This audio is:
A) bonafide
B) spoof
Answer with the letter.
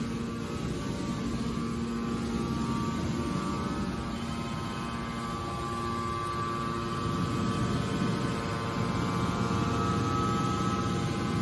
A